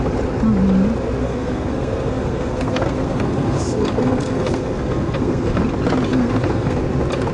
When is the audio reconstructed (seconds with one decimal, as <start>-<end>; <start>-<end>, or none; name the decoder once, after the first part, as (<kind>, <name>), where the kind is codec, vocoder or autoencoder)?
1.2-5.6 (codec, SNAC); 6.1-6.8